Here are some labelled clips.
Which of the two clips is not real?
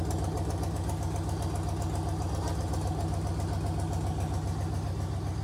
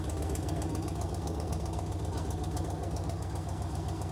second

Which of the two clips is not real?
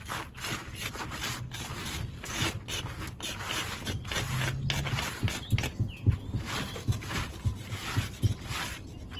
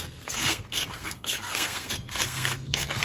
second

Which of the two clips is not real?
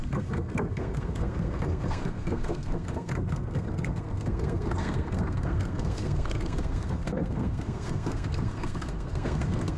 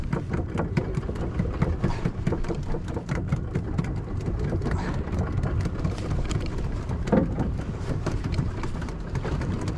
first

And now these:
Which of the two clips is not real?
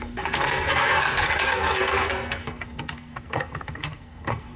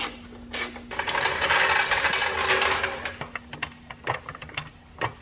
first